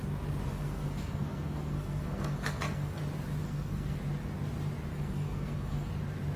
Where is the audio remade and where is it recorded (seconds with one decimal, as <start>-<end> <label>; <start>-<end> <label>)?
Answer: 0.0-0.5 recorded; 0.5-3.0 remade; 3.0-3.4 recorded; 3.4-4.0 remade; 4.0-4.9 recorded; 4.9-5.9 remade; 5.9-6.4 recorded